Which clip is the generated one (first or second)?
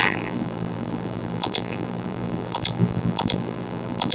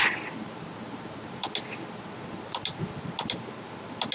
first